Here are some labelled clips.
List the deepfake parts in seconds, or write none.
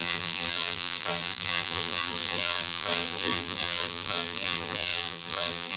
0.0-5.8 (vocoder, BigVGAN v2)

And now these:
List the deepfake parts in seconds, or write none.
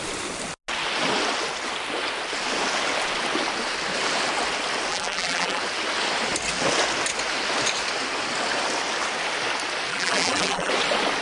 4.9-5.6 (vocoder, BigVGAN v2); 9.9-10.7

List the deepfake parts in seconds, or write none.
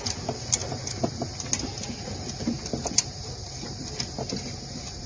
none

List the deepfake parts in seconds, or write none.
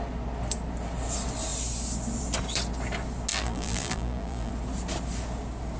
3.3-4.5 (vocoder, BigVGAN v2)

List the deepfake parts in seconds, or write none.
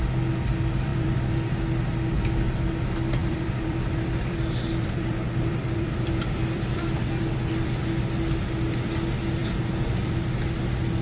0.9-1.5 (vocoder, BigVGAN v2); 3.2-8.0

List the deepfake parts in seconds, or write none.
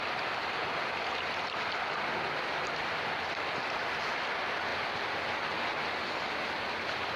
none